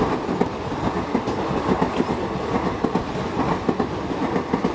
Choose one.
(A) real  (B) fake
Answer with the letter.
A